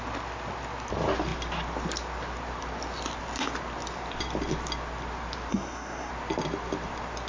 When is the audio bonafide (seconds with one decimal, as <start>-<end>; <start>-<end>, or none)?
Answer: 0.0-5.5; 6.1-7.3